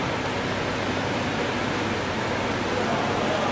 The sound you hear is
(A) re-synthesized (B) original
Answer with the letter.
B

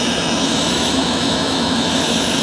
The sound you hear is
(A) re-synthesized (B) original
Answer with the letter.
A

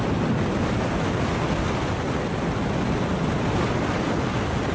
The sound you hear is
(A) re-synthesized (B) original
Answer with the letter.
B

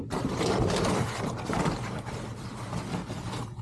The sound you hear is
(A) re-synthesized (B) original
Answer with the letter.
B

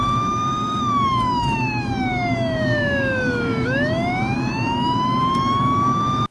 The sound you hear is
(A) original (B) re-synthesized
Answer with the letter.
B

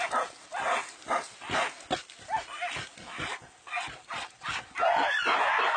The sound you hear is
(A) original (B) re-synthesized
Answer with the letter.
A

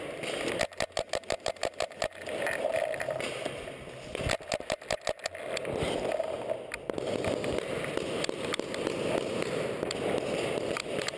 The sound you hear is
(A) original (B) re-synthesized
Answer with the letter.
A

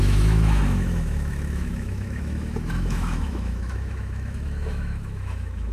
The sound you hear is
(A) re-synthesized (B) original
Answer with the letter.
A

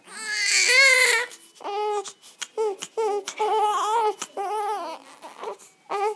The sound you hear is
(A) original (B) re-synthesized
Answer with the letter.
A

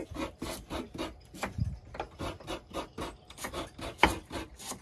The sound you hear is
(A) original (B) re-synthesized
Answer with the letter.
A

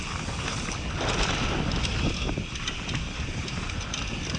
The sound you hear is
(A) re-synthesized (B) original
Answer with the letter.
B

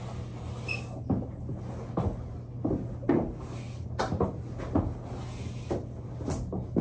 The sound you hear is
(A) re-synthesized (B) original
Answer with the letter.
B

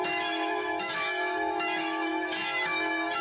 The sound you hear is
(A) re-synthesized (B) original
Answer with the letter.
A